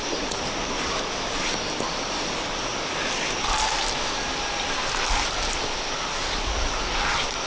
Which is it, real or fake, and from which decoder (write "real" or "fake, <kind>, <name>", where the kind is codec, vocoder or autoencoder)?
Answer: real